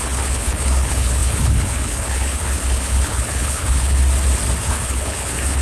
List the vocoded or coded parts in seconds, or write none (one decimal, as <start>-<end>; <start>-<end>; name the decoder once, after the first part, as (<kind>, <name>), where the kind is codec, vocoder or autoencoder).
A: 0.0-4.0 (codec, HILCodec); 4.6-5.6